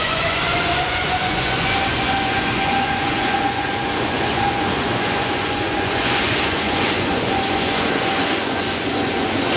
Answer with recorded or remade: remade